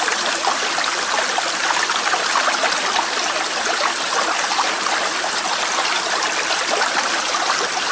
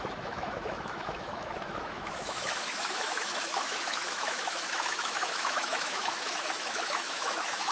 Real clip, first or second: first